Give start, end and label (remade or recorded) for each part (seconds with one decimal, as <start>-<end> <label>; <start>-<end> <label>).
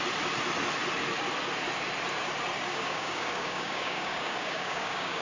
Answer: 0.0-2.7 recorded; 2.7-5.2 remade